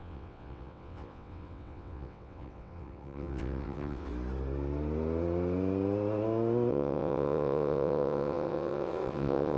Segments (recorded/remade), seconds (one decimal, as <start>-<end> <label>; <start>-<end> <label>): 0.0-4.1 remade; 4.1-6.7 recorded; 6.7-9.6 remade